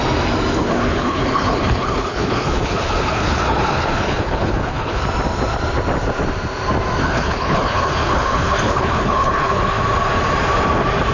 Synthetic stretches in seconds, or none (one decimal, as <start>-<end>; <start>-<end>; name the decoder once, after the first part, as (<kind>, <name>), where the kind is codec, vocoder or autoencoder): 0.6-5.0 (codec, HILCodec); 7.0-9.6

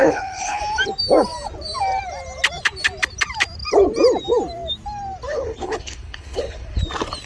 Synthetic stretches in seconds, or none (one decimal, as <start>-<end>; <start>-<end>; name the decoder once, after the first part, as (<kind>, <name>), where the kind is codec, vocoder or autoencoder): 0.0-0.6 (codec, HILCodec); 5.3-6.8